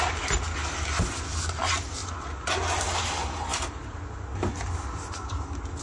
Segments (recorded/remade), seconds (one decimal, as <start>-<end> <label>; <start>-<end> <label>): 0.0-5.8 recorded